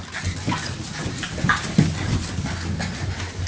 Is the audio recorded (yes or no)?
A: yes